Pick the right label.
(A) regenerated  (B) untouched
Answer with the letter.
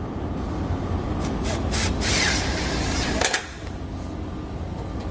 B